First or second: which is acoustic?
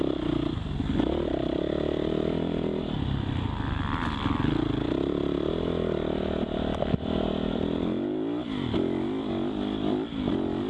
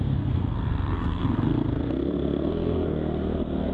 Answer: first